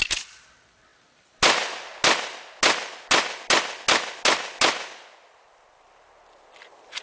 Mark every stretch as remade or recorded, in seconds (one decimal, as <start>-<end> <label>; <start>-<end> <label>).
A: 0.0-7.0 recorded